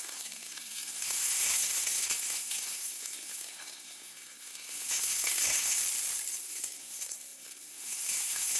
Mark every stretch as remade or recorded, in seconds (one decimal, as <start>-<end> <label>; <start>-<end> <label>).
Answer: 0.0-5.8 remade; 5.8-6.4 recorded; 6.4-8.6 remade